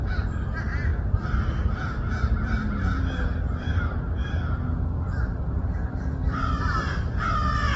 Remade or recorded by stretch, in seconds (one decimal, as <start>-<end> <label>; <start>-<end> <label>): 0.0-7.8 recorded